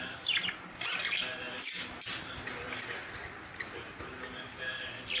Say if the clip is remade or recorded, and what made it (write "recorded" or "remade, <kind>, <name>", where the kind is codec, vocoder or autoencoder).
recorded